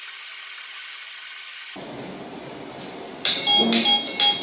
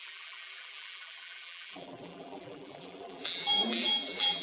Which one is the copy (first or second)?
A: second